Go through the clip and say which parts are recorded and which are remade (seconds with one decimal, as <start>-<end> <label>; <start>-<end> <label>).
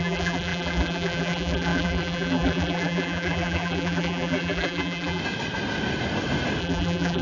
0.0-5.2 remade; 5.2-6.6 recorded; 6.6-7.2 remade